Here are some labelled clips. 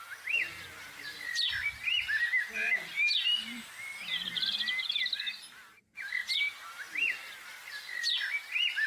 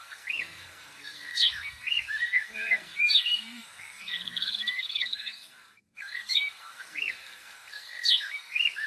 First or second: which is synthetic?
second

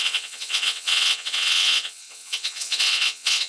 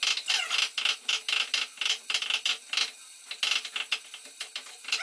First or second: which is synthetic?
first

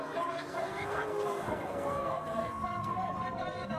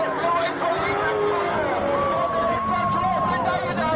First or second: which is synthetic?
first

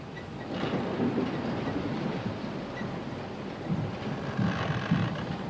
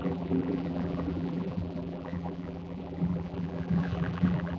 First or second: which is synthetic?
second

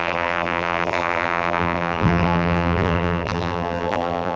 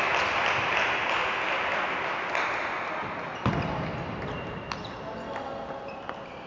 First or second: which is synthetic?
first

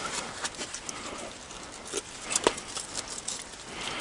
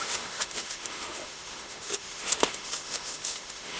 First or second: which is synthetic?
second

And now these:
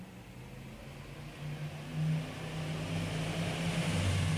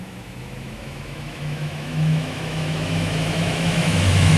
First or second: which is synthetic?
second